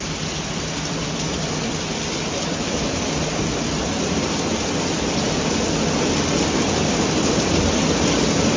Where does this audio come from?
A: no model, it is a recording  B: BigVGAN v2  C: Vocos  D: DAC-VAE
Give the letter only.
A